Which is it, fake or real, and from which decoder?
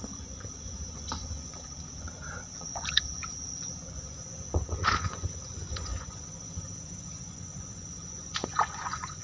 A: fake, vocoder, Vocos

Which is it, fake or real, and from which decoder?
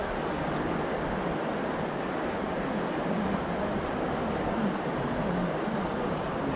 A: real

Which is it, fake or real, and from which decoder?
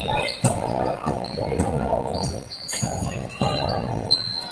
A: fake, vocoder, WaveNeXt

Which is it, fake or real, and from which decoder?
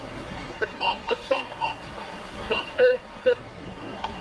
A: fake, codec, SNAC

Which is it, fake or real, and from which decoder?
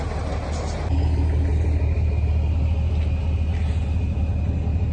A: real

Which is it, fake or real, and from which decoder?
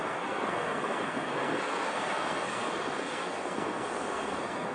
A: fake, codec, SNAC